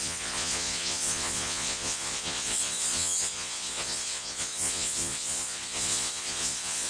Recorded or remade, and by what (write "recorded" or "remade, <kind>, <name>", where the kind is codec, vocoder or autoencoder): remade, vocoder, Vocos